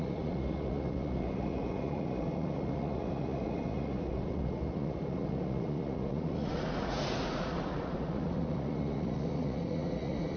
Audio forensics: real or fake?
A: fake